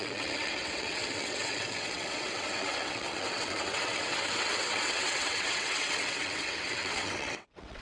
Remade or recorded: remade